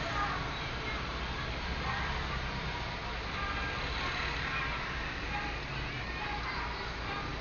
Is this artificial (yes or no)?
no